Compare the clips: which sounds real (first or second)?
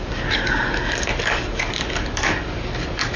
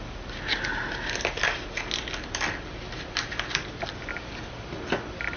second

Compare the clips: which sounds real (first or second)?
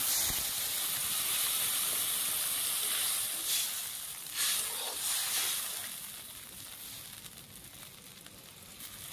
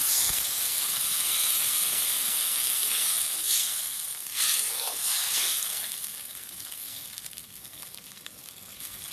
first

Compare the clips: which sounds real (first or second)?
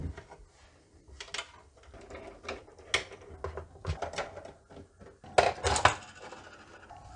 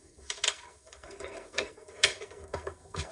first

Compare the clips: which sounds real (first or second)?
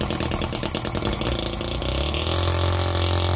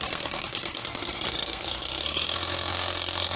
first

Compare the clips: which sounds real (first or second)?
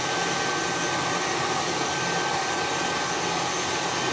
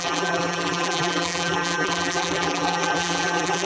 first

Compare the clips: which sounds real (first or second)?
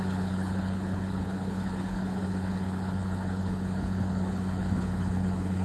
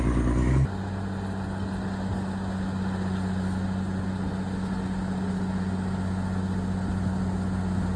second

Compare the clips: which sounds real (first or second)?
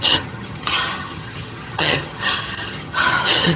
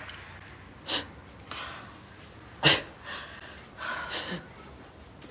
second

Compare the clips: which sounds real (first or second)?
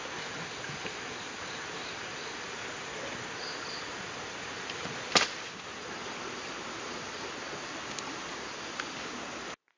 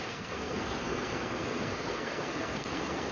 first